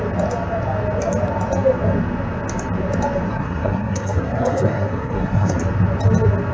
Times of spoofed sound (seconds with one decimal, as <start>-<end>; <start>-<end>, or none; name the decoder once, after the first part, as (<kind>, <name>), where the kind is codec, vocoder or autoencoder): 3.3-5.6 (codec, SNAC)